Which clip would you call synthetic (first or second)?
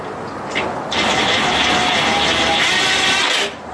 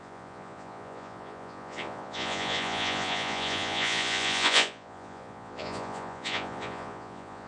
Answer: second